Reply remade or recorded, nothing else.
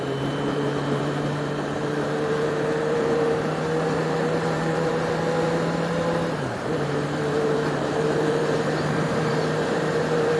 remade